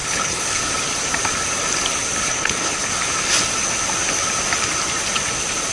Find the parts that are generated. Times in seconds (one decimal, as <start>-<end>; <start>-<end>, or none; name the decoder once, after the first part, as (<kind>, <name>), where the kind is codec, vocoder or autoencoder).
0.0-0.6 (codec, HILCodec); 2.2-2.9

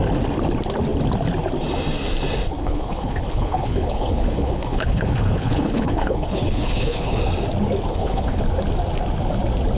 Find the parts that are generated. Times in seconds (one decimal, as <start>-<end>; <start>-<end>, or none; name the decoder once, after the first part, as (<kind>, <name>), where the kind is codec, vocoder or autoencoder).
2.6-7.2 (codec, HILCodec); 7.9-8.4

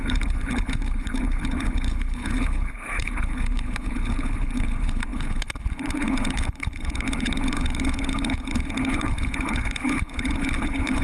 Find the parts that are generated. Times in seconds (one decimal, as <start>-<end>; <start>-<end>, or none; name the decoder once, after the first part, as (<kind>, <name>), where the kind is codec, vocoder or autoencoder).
0.0-11.0 (codec, HILCodec)

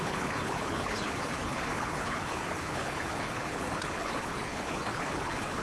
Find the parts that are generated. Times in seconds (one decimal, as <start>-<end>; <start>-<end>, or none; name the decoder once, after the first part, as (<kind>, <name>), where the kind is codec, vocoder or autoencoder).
0.0-5.6 (codec, HILCodec)

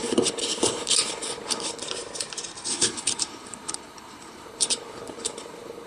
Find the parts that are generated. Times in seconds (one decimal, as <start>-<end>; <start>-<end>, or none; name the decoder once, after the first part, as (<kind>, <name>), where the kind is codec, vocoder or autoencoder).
0.0-1.8 (codec, HILCodec); 2.7-5.9